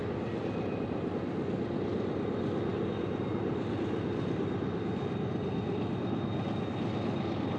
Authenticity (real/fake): real